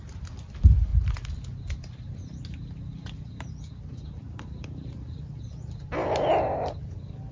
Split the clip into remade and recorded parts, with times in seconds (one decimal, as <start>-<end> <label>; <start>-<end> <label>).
0.0-7.3 recorded